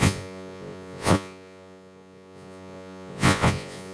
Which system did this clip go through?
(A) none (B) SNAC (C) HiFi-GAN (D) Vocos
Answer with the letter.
D